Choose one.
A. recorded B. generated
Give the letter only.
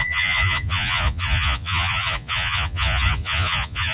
B